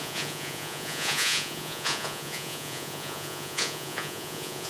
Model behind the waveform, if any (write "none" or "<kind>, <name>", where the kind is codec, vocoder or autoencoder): vocoder, Vocos